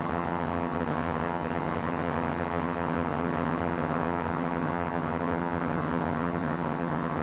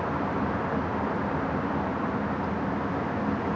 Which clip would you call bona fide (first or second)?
second